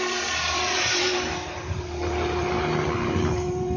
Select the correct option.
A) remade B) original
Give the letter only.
A